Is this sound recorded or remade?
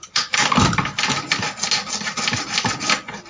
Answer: recorded